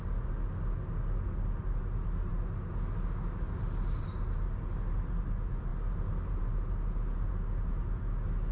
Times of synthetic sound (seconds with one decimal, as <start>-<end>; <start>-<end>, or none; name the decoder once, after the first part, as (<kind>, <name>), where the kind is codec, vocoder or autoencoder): none